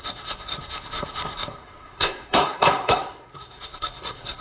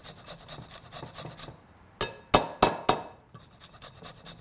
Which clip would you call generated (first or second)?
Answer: first